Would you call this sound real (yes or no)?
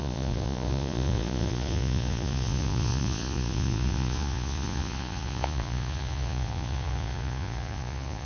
no